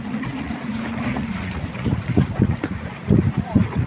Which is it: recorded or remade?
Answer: remade